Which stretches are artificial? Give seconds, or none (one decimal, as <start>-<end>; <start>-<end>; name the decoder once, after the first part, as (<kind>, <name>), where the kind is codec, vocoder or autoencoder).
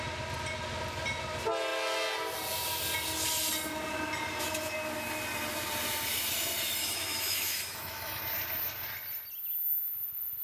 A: 6.8-8.2 (autoencoder, DAC-VAE)